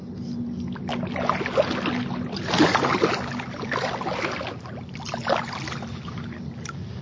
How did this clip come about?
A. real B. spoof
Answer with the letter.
A